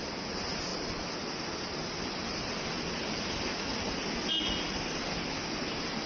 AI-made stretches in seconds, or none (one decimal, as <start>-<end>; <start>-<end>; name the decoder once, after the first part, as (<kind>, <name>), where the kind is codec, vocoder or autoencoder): none